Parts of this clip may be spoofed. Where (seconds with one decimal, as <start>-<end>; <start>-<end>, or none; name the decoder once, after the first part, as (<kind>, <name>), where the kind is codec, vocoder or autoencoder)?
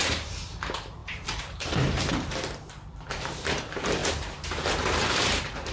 0.0-5.7 (vocoder, BigVGAN v2)